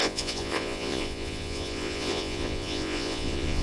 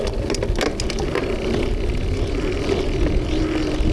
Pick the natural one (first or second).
second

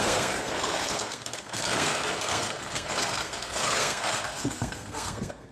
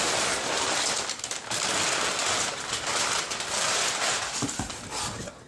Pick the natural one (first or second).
second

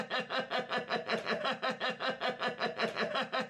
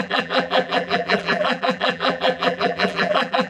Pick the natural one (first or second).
first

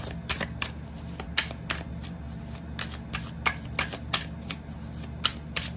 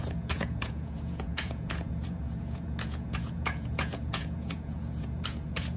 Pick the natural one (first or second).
first